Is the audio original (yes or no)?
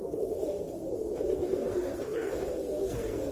no